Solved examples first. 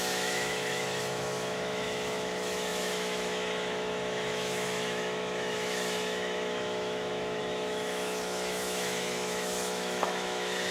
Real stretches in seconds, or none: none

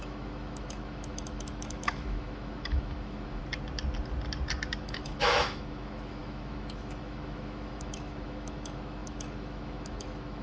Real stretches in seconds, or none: 3.4-4.8